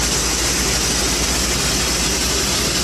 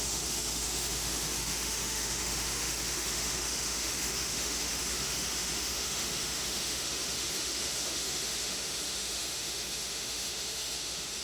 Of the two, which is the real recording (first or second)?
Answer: first